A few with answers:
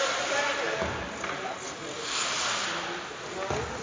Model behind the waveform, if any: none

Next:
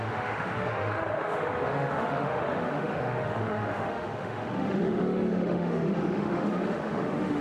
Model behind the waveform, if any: autoencoder, DAC-VAE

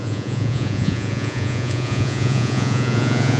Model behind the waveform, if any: vocoder, Vocos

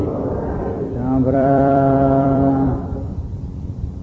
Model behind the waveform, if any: vocoder, BigVGAN v2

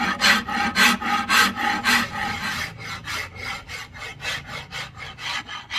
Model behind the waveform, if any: none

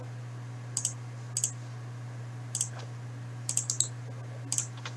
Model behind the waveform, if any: none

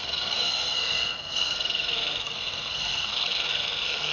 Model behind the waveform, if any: codec, SNAC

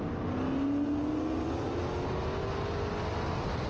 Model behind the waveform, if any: none